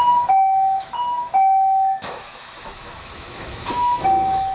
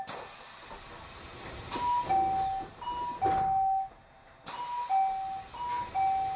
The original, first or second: second